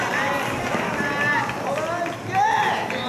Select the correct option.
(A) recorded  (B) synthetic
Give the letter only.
A